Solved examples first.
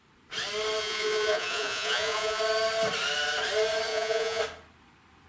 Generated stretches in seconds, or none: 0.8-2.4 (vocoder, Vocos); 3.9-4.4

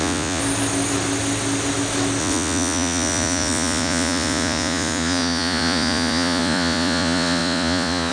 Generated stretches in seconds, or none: 0.0-0.4 (vocoder, Vocos); 2.2-8.1

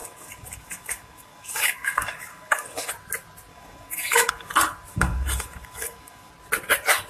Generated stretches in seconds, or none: 0.0-2.9 (codec, DAC); 3.5-4.5; 4.9-6.3

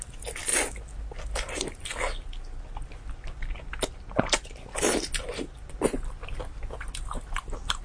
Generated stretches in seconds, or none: none

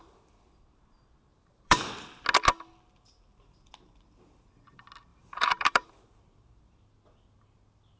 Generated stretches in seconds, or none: 1.3-1.9 (vocoder, BigVGAN v2); 5.1-5.9

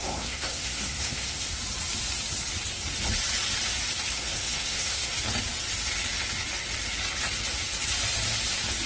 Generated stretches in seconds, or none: 0.0-1.6 (codec, SNAC); 4.1-5.1

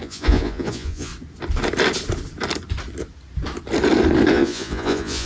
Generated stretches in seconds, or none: 0.0-1.1 (vocoder, Vocos); 4.3-5.3

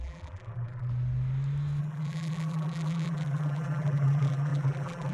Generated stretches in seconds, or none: 0.0-0.9 (vocoder, BigVGAN v2); 1.8-5.1